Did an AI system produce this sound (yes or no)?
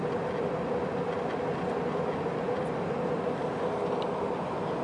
no